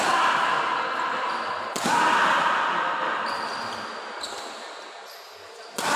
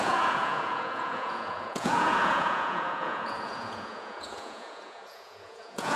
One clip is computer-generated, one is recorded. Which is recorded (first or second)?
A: first